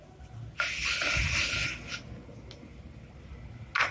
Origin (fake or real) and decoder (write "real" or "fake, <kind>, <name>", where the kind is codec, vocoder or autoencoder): real